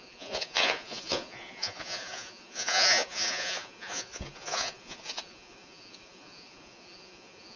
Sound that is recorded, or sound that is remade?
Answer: remade